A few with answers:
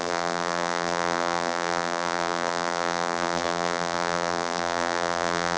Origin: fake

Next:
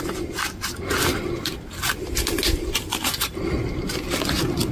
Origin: real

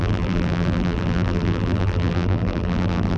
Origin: fake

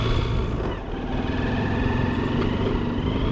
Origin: real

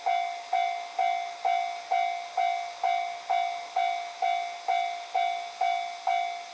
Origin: real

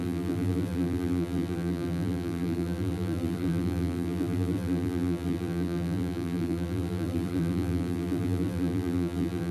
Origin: fake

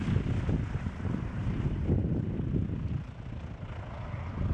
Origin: real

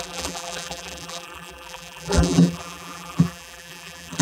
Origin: fake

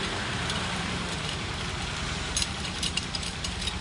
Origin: fake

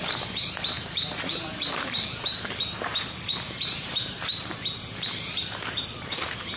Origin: fake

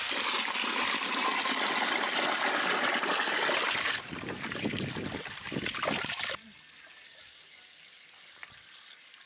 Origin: real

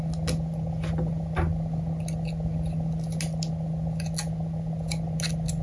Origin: real